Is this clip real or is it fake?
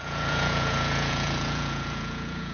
fake